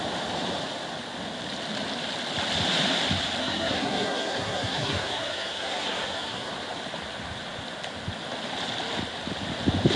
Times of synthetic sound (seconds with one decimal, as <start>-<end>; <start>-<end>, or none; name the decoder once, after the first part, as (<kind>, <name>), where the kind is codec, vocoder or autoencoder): 3.4-6.5 (codec, SNAC)